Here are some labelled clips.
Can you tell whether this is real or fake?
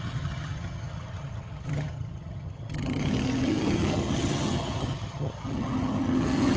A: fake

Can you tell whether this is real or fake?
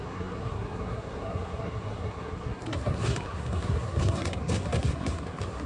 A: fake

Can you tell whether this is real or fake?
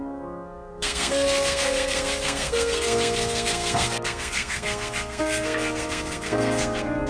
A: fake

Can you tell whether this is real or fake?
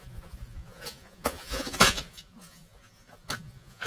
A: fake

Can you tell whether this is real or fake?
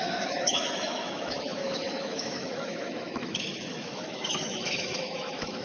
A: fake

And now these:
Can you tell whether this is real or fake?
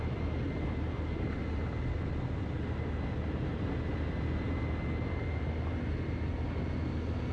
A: real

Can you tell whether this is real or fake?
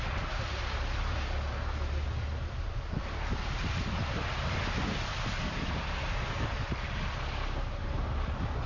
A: real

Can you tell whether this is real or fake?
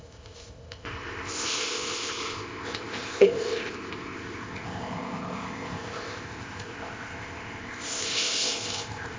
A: fake